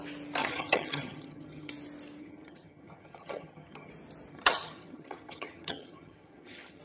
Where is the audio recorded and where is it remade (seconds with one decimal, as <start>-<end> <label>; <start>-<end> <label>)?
0.0-0.4 recorded; 0.4-1.7 remade; 1.7-2.2 recorded; 2.2-3.9 remade; 3.9-4.3 recorded; 4.3-6.8 remade